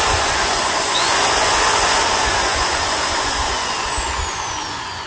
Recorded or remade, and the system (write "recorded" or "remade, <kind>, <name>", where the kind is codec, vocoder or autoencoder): remade, vocoder, Vocos